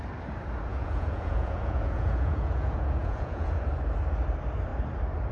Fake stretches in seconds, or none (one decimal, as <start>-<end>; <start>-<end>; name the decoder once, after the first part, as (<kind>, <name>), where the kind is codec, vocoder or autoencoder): 0.7-3.7 (vocoder, Vocos)